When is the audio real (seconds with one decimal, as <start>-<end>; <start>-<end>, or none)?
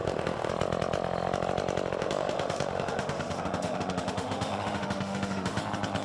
0.5-2.0; 5.6-6.0